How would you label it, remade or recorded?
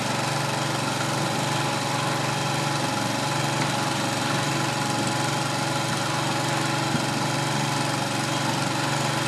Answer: recorded